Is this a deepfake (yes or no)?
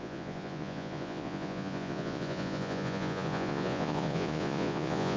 yes